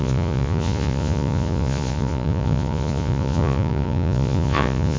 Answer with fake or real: fake